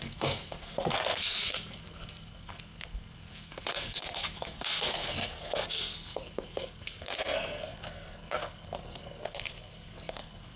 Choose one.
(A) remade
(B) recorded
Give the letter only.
A